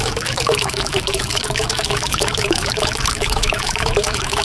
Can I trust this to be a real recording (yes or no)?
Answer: no